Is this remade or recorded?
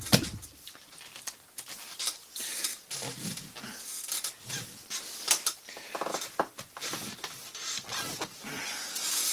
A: recorded